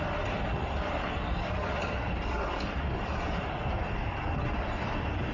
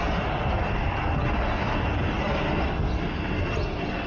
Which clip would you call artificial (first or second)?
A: first